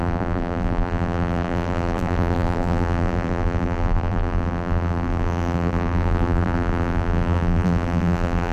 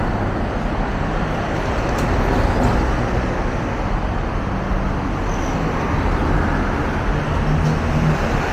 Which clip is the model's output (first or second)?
first